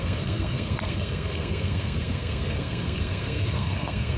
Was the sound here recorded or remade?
remade